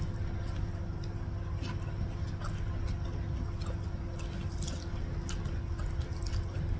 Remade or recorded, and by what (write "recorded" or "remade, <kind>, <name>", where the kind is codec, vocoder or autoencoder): recorded